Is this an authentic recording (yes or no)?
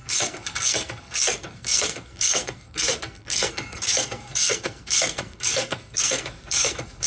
no